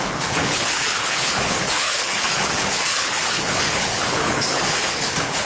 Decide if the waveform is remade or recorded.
remade